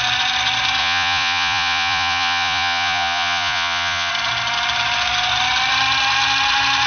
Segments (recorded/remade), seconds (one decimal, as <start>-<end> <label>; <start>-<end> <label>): 0.0-0.8 recorded; 0.8-4.1 remade; 4.1-6.9 recorded